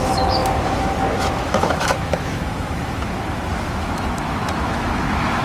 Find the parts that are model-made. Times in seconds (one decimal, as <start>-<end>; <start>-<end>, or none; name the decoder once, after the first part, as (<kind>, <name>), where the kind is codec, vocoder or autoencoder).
0.0-5.4 (autoencoder, DAC-VAE)